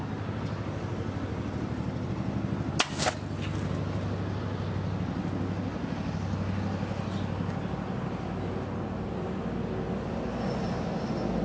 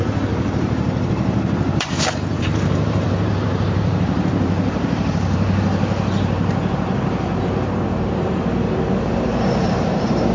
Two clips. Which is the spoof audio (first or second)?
second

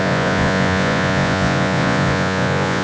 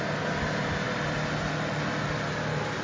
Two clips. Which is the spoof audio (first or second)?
first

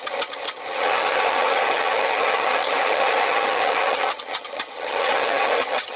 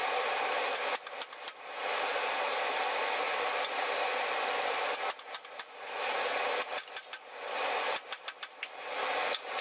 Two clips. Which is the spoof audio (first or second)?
first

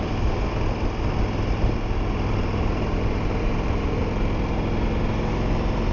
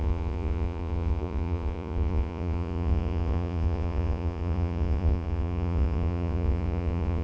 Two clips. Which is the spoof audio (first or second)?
second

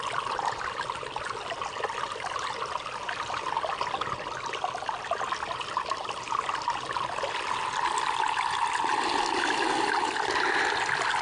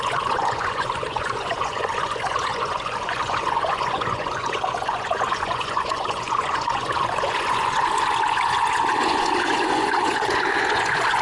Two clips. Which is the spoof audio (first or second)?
second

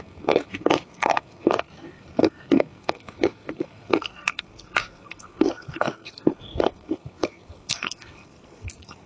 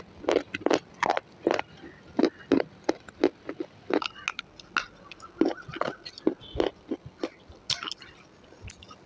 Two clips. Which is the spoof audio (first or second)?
first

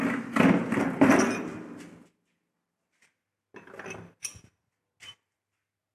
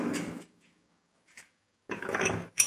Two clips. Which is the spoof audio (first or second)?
second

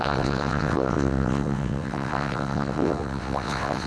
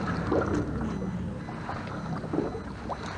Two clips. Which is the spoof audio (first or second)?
first